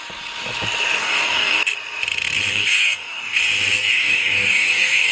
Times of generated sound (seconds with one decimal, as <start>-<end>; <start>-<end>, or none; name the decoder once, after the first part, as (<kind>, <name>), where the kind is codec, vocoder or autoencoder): 1.0-1.6 (codec, DAC); 2.5-3.4; 3.9-5.1